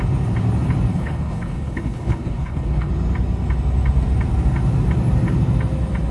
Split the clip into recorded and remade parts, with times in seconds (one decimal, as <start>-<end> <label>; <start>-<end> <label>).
0.0-0.9 recorded; 0.9-2.9 remade; 2.9-6.1 recorded